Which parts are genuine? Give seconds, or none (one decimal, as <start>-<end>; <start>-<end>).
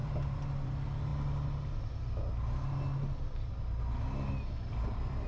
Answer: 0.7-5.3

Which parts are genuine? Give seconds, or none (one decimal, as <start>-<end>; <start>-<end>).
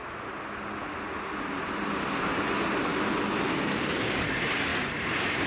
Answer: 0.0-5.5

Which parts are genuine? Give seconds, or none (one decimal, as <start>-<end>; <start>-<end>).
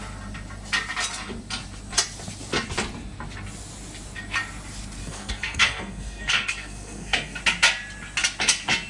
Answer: 0.0-5.0; 7.4-8.9